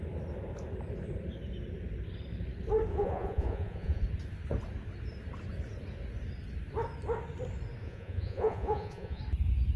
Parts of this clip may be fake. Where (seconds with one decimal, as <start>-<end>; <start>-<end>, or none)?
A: 2.9-4.0; 7.8-9.2